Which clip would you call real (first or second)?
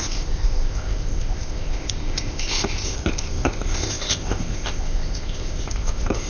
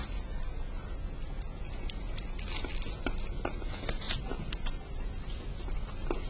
second